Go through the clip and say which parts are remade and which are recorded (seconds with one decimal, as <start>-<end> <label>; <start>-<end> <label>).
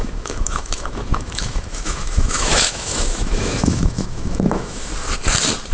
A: 0.0-4.9 remade; 4.9-5.7 recorded